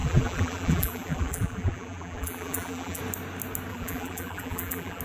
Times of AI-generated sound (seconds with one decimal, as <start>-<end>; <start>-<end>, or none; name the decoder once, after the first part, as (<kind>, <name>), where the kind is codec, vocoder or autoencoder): 0.0-3.0 (vocoder, BigVGAN v2); 3.7-5.0